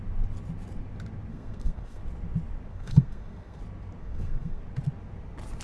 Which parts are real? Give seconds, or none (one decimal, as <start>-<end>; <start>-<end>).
0.0-1.3; 2.0-2.7; 3.6-4.0; 4.6-5.6